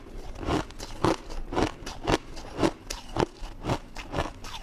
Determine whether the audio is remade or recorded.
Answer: recorded